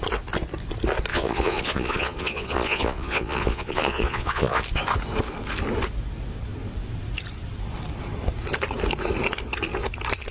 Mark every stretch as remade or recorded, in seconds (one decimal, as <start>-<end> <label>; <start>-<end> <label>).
0.0-1.1 recorded; 1.1-4.6 remade; 4.6-10.3 recorded

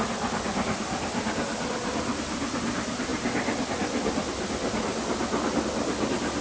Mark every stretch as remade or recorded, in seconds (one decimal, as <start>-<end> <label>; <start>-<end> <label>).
0.0-6.4 recorded